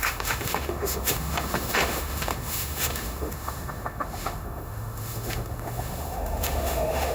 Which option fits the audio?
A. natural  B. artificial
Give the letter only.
B